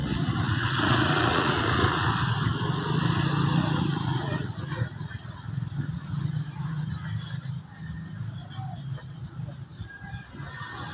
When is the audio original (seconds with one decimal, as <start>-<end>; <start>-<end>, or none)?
2.1-3.6; 6.9-10.9